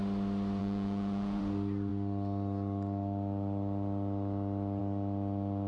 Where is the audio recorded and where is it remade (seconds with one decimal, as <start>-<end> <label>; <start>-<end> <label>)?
0.0-0.6 recorded; 0.6-1.4 remade; 1.4-5.7 recorded